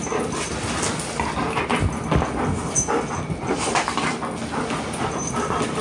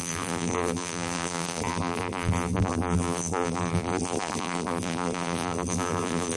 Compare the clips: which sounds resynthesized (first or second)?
second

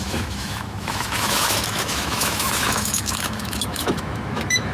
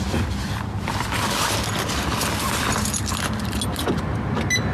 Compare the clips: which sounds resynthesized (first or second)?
first